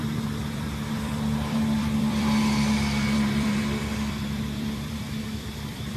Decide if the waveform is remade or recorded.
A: remade